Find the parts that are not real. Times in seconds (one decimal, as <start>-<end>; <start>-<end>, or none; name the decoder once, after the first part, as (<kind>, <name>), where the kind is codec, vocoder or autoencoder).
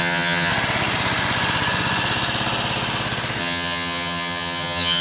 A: 0.0-0.5 (vocoder, HiFi-GAN); 3.4-5.0